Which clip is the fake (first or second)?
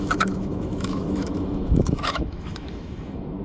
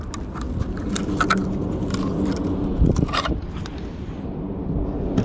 first